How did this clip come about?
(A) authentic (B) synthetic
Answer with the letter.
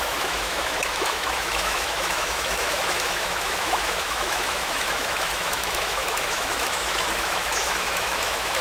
B